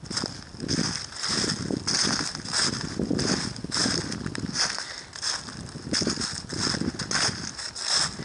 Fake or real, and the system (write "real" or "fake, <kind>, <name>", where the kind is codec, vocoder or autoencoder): real